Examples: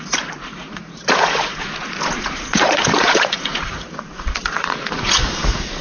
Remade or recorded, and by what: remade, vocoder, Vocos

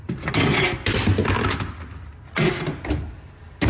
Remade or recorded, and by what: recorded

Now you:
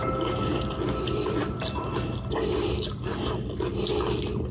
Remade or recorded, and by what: recorded